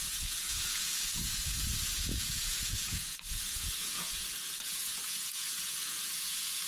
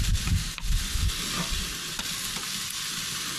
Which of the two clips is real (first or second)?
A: second